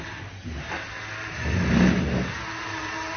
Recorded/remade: recorded